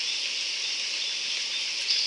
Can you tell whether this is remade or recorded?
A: recorded